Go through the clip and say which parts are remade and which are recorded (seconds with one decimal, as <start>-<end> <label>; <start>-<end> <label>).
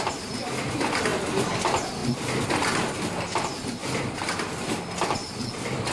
0.0-5.9 recorded